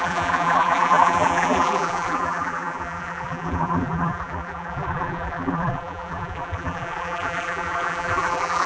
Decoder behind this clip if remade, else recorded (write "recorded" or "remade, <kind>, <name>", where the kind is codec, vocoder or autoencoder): remade, vocoder, BigVGAN v2